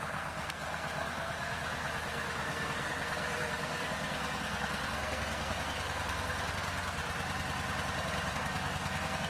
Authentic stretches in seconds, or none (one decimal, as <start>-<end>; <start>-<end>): 7.0-8.3